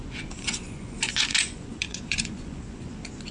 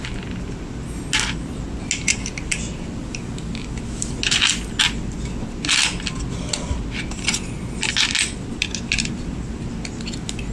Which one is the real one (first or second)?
second